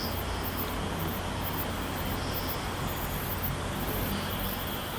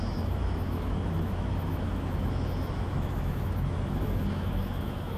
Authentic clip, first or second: first